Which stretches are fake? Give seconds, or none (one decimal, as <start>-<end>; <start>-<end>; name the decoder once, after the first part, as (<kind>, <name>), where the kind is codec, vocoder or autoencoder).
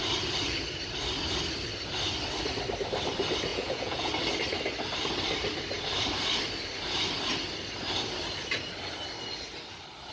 3.5-4.1 (vocoder, Vocos)